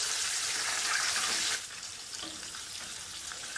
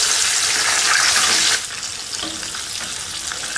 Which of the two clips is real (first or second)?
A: second